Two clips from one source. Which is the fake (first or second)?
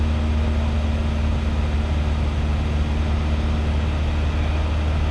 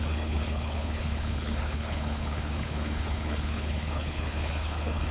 second